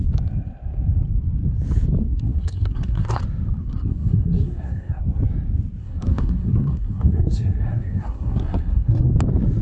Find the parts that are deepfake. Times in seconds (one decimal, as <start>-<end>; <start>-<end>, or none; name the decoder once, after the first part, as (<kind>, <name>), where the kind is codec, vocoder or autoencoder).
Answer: 2.0-3.2 (codec, SNAC); 3.6-5.0; 5.8-9.1